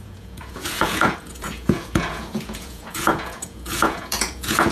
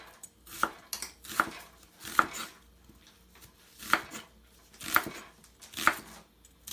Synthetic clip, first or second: first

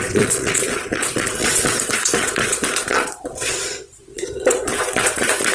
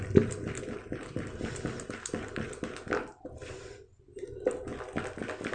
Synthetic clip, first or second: first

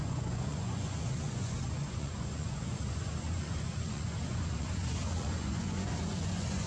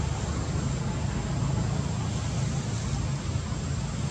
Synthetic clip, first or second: first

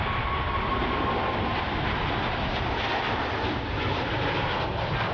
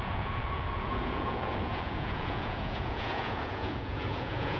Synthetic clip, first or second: second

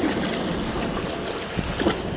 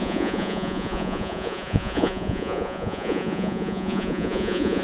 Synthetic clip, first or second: second